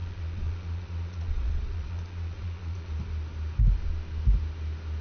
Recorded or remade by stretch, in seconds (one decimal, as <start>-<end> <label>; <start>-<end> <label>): 0.0-2.9 remade; 2.9-5.0 recorded